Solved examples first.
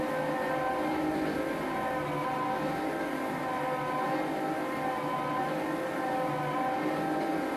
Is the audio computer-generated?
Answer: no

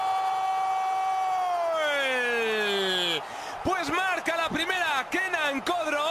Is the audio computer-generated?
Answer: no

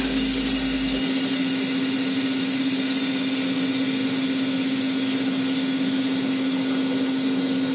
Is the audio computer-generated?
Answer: no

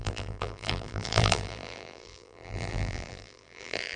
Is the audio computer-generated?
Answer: yes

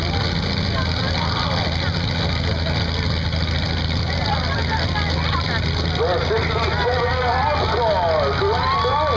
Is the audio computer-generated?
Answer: no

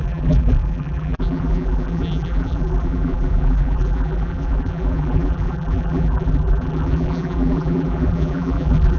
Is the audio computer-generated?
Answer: yes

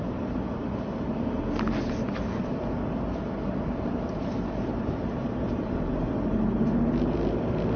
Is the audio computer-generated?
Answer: yes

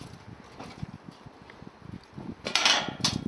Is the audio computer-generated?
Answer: no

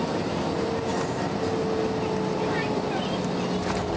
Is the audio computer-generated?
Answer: no